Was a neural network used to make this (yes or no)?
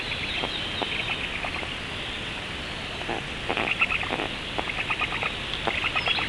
no